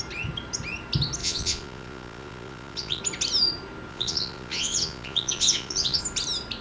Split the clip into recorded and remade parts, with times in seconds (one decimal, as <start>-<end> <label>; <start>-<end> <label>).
0.0-1.2 recorded; 1.2-3.0 remade; 3.0-3.9 recorded; 3.9-6.0 remade; 6.0-6.6 recorded